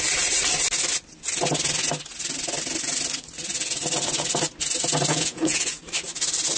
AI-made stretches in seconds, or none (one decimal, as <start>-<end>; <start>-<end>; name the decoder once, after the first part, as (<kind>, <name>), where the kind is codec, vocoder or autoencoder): 5.1-5.8 (vocoder, Vocos)